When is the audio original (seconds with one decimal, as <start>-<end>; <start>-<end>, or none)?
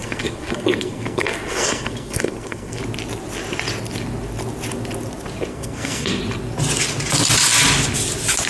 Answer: 2.8-5.5; 6.2-8.5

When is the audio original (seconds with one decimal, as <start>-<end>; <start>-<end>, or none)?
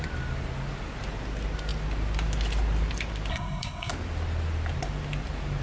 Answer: 0.0-3.3; 3.9-5.6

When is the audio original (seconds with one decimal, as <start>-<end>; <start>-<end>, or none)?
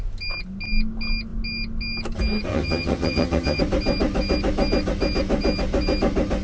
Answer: 0.0-2.5; 3.6-6.4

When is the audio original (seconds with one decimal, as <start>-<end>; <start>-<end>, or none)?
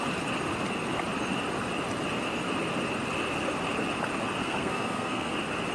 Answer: 0.0-4.4; 5.3-5.7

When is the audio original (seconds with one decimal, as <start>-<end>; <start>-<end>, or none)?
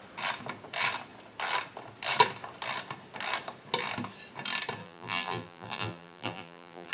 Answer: 0.0-4.8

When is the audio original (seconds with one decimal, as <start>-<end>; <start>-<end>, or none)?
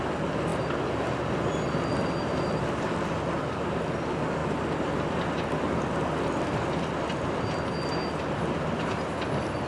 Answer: 0.0-9.7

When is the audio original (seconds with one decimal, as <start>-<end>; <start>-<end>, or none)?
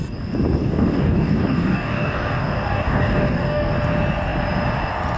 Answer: 0.0-0.6; 3.7-5.2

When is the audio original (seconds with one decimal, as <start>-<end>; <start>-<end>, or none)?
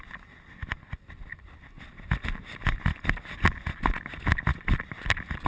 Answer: 0.0-5.5